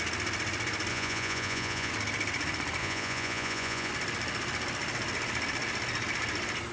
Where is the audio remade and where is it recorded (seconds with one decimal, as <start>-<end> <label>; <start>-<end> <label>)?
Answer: 0.0-0.9 recorded; 0.9-1.9 remade; 1.9-2.8 recorded; 2.8-3.9 remade; 3.9-6.7 recorded